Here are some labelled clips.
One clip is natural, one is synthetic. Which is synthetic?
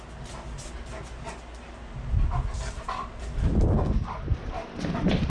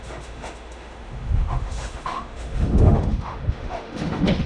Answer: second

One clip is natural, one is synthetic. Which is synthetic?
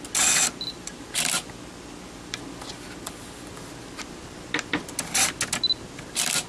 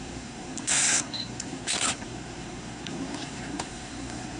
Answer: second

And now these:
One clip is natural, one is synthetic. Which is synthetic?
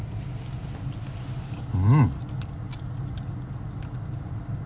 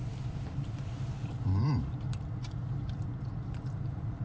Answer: second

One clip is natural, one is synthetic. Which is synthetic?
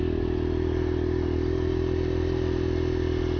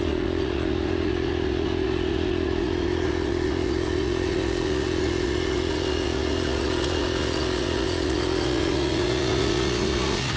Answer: second